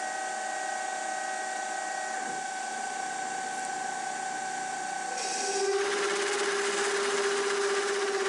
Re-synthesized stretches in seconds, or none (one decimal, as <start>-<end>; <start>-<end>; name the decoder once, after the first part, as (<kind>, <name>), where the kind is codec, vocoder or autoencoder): none